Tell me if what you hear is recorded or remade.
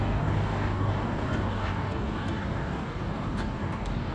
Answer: remade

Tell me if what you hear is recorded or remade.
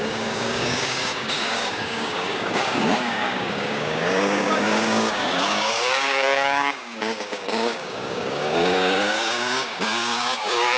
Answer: remade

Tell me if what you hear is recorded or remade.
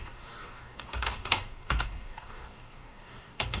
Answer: remade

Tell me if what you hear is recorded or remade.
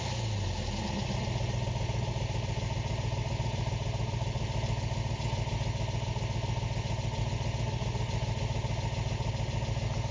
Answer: recorded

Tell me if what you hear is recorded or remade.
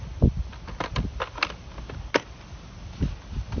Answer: recorded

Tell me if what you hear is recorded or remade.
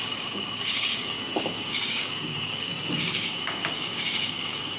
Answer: remade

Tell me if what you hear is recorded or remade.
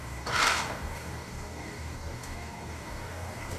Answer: remade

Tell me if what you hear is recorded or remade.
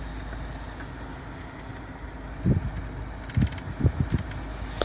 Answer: recorded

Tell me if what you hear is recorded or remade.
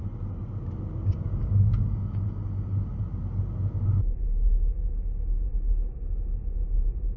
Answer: recorded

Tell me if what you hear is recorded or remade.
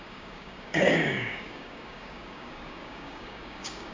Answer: remade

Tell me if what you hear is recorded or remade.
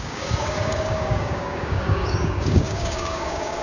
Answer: remade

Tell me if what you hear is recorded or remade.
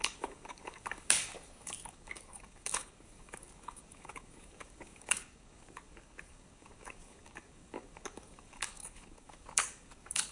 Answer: remade